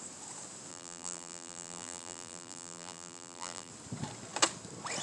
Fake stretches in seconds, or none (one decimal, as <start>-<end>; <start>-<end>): 0.7-3.7